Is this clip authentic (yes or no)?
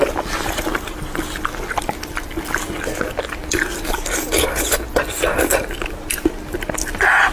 yes